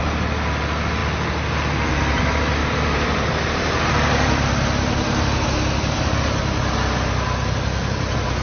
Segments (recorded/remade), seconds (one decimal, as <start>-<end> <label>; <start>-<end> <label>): 0.0-2.6 recorded; 2.6-6.3 remade; 6.3-8.4 recorded

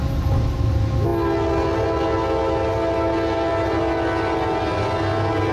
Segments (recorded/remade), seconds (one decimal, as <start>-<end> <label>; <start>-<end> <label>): 0.0-5.5 recorded

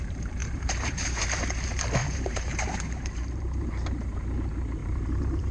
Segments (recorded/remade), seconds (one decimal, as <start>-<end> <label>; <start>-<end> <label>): 0.0-0.4 recorded; 0.4-1.4 remade; 1.4-2.0 recorded; 2.0-4.2 remade; 4.2-4.8 recorded; 4.8-5.5 remade

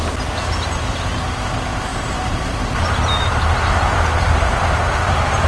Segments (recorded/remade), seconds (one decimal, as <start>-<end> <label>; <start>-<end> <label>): 0.0-1.9 recorded; 1.9-5.5 remade

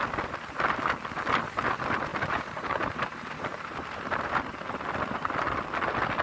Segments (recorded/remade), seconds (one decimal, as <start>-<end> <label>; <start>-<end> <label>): 0.0-2.1 recorded; 2.1-4.4 remade; 4.4-6.2 recorded